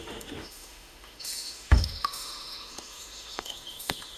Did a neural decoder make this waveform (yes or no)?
yes